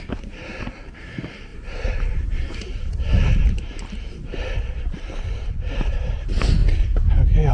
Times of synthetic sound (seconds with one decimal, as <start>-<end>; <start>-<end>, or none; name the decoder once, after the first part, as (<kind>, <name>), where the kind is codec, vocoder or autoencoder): 0.0-6.6 (vocoder, BigVGAN v2)